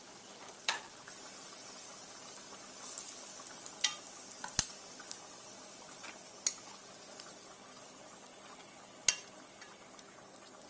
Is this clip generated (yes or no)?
no